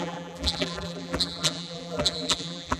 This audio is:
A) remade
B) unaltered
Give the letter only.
A